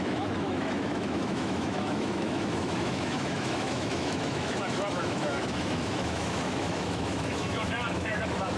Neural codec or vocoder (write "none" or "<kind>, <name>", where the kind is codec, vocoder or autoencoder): autoencoder, DAC-VAE